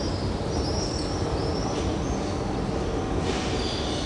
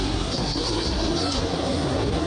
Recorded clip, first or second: first